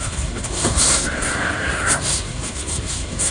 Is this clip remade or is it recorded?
remade